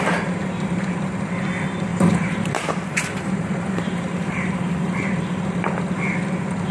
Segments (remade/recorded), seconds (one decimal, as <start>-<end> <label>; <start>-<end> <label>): 0.0-1.9 recorded; 1.9-4.7 remade; 4.7-6.7 recorded

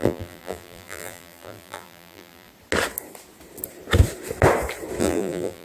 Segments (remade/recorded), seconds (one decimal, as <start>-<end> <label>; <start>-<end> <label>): 0.0-2.5 remade; 2.5-5.0 recorded; 5.0-5.6 remade

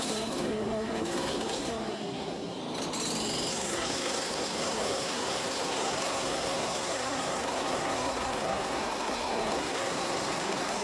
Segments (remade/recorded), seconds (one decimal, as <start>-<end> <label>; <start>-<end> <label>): 0.0-2.6 remade; 2.6-3.5 recorded; 3.5-10.8 remade

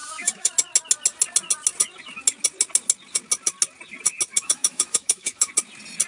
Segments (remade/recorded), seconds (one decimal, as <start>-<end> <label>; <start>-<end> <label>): 0.0-0.5 remade; 0.5-4.3 recorded; 4.3-5.5 remade; 5.5-6.1 recorded